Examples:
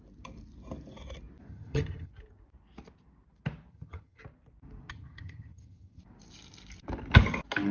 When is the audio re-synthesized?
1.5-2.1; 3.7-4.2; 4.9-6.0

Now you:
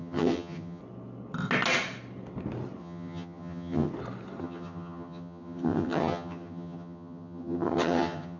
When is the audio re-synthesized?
0.0-0.8; 2.8-3.9; 4.4-8.4